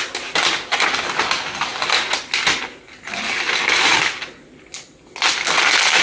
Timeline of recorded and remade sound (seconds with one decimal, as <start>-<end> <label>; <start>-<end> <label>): 0.0-6.0 recorded